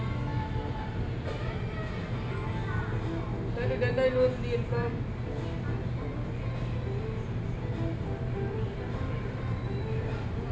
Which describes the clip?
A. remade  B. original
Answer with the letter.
B